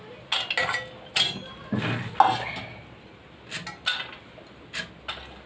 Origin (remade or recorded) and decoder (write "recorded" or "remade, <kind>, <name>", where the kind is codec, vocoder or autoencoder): recorded